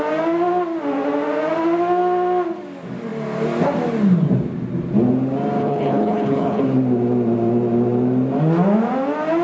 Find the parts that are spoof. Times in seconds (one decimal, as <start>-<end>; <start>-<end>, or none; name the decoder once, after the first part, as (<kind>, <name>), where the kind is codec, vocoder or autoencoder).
5.6-6.6 (codec, HILCodec)